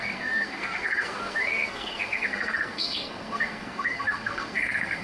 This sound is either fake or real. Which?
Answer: fake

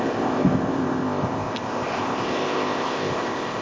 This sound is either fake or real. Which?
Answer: fake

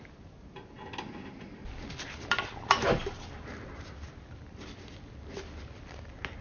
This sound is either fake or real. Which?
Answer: real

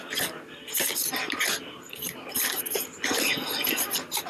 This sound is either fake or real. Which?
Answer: real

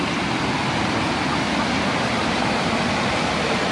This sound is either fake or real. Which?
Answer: real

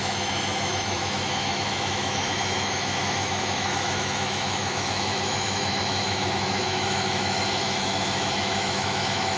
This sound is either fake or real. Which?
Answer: fake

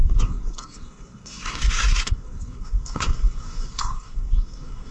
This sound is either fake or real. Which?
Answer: fake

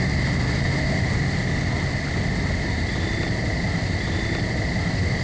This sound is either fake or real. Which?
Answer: real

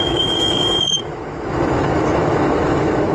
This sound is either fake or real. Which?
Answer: fake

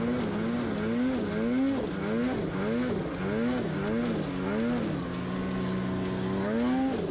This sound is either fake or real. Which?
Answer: real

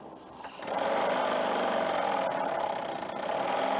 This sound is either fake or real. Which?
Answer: real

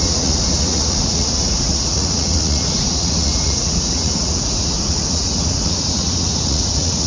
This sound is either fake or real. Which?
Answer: fake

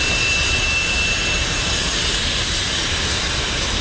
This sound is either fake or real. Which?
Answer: fake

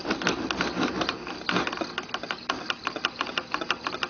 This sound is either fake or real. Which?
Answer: real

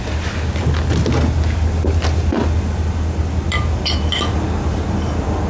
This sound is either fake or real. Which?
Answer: real